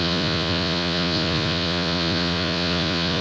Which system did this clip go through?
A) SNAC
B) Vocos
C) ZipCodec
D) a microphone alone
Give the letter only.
B